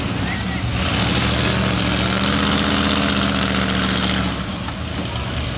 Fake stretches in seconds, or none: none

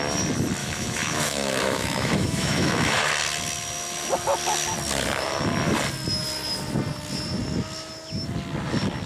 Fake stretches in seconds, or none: 0.6-3.1 (autoencoder, DAC-VAE)

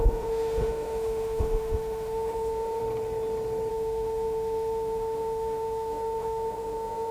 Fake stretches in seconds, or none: 0.0-2.8 (autoencoder, DAC-VAE); 3.7-7.1

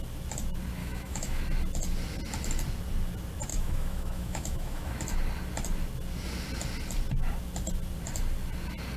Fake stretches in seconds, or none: 0.8-1.4 (autoencoder, DAC-VAE); 3.5-5.0

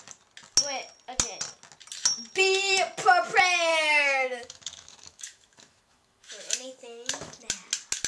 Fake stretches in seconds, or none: 3.7-7.4 (autoencoder, DAC-VAE)

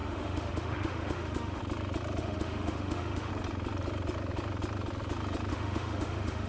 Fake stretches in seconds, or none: 0.0-1.6 (autoencoder, DAC-VAE); 2.2-3.3; 5.5-6.5

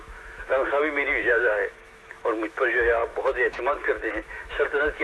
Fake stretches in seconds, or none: 0.0-5.0 (autoencoder, DAC-VAE)

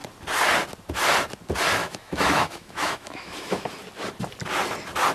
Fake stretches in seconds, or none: 1.8-3.7 (autoencoder, DAC-VAE)